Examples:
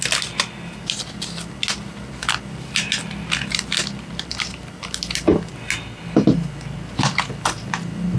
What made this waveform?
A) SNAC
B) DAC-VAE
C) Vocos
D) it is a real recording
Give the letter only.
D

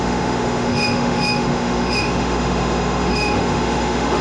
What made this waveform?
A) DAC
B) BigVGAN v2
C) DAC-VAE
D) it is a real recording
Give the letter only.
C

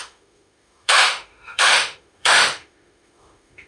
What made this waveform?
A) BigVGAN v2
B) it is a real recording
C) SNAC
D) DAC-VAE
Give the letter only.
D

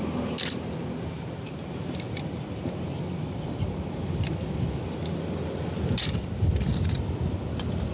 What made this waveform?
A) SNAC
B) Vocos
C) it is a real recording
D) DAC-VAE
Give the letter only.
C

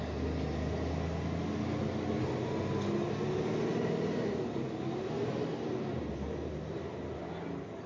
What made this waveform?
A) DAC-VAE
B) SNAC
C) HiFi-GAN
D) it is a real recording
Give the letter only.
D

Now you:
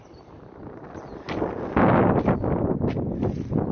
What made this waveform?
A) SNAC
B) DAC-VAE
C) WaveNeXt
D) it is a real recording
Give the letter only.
D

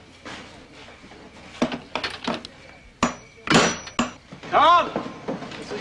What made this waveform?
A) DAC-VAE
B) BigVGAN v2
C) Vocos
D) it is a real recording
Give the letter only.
D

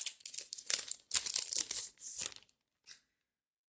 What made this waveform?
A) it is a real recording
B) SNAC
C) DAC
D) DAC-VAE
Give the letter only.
A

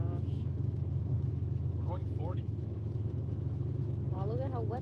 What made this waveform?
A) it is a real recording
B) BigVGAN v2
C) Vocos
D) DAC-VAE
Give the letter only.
D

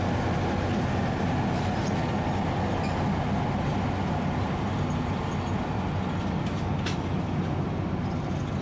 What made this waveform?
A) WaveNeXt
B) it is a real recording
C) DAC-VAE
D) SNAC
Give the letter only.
B